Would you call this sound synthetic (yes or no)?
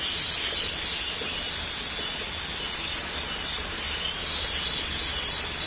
no